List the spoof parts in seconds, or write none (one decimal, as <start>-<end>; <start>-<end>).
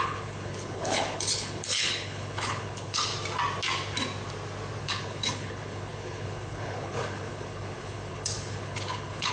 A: 0.0-3.1; 4.8-9.3